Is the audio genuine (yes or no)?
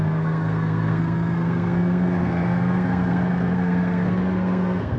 no